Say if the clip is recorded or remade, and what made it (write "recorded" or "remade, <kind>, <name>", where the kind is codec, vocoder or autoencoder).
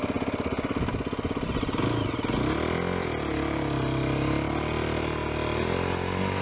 recorded